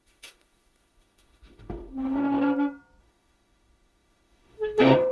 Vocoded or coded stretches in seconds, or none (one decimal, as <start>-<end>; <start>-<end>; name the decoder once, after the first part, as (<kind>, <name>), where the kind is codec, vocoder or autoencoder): 0.0-2.2 (autoencoder, DAC-VAE); 3.0-5.1